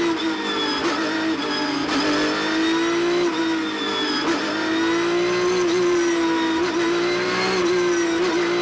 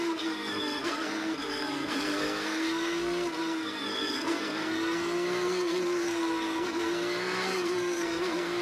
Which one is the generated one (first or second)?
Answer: second